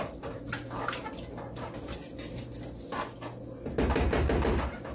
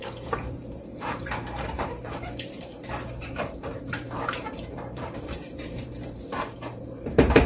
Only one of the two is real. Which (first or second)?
first